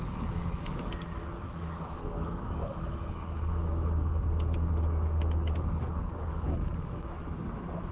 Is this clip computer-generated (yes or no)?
yes